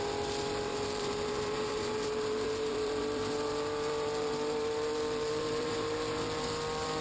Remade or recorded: remade